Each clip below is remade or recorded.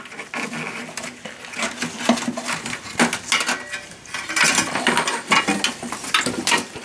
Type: recorded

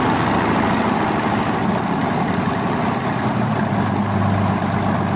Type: recorded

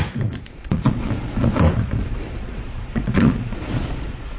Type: remade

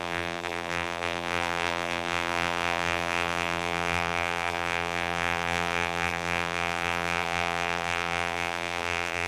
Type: remade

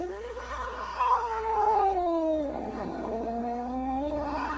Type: remade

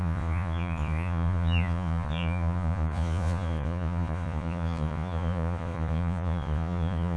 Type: remade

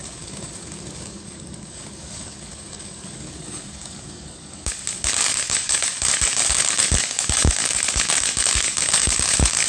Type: remade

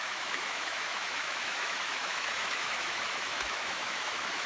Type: remade